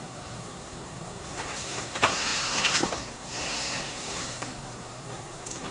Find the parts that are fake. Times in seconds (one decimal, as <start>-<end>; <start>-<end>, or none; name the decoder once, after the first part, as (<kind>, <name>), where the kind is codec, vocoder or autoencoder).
0.0-5.7 (codec, SNAC)